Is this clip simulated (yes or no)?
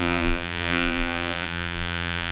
yes